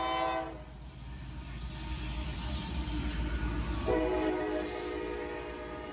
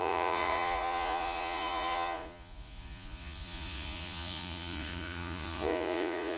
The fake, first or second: second